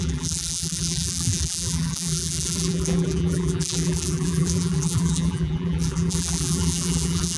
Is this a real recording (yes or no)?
no